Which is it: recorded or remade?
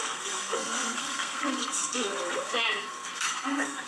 remade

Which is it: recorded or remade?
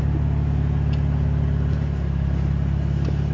recorded